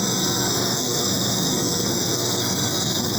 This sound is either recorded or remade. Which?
remade